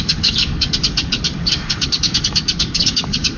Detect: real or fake fake